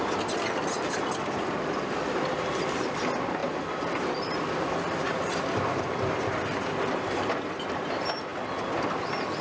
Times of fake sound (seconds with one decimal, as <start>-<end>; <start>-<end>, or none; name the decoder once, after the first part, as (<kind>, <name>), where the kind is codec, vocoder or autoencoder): 3.4-7.9 (vocoder, BigVGAN v2)